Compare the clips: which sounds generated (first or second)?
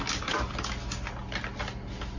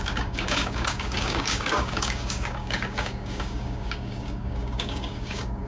second